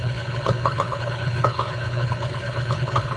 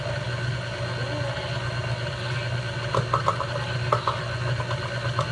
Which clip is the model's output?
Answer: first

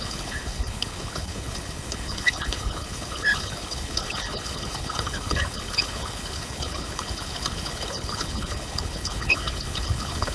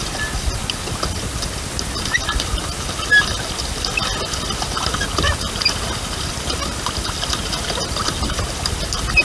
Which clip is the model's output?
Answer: first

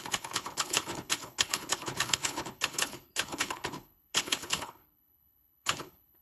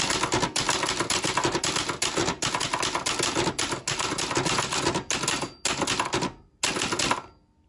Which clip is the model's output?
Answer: first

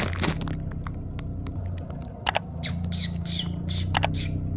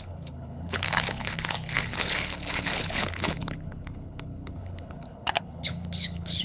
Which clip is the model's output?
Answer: second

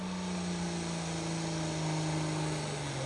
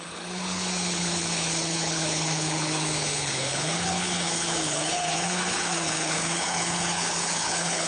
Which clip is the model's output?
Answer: second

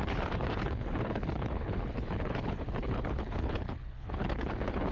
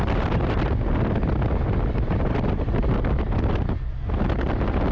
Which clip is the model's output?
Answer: first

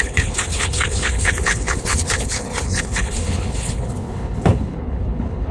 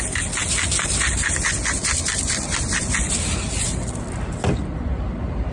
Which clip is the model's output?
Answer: first